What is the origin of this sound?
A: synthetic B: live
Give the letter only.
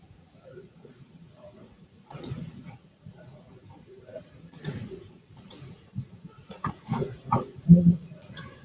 A